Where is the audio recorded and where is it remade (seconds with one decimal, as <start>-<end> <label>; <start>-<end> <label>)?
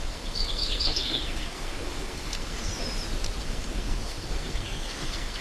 0.0-2.7 remade; 2.7-3.4 recorded; 3.4-5.4 remade